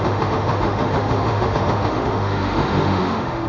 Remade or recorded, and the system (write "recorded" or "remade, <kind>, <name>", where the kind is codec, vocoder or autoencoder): remade, autoencoder, DAC-VAE